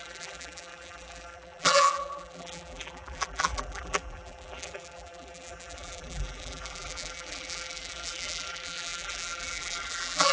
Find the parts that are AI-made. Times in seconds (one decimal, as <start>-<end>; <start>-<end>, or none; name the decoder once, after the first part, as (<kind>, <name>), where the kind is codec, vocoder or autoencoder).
0.0-10.3 (vocoder, BigVGAN v2)